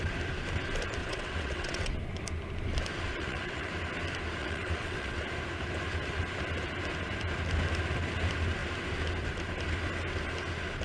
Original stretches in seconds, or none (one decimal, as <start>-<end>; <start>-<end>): 0.0-1.0; 1.9-3.1; 3.7-4.4; 5.2-10.8